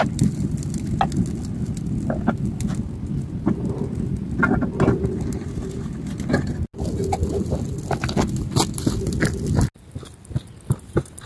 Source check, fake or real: real